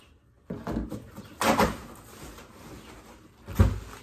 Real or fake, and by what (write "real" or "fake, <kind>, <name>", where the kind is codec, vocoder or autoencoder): real